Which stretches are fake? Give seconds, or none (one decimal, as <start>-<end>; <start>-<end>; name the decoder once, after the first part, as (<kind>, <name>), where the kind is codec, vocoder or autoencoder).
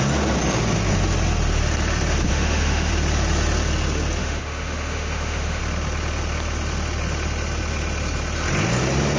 2.3-2.9 (autoencoder, DAC-VAE); 4.2-5.6